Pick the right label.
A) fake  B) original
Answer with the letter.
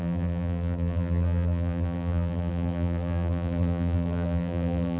A